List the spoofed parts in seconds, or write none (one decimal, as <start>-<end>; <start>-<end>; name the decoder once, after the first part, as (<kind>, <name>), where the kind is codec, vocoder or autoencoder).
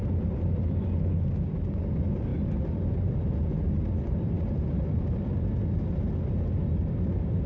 none